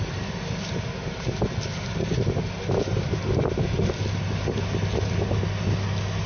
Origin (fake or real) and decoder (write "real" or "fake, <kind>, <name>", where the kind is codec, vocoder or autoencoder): real